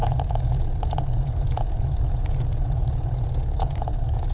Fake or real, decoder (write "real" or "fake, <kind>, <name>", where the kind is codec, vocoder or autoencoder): fake, vocoder, Vocos